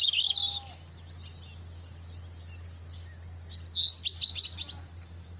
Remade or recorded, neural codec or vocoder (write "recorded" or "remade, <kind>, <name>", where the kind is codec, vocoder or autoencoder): recorded